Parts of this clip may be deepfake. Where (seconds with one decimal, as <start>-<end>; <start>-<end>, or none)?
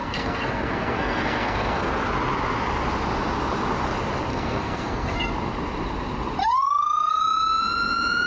0.0-1.9; 4.3-5.3; 6.4-7.2